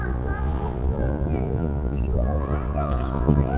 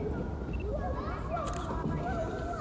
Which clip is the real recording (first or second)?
second